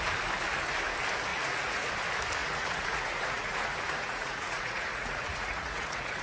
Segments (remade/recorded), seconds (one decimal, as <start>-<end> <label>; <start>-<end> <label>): 0.0-1.3 recorded; 1.3-1.9 remade; 1.9-2.4 recorded; 2.4-6.2 remade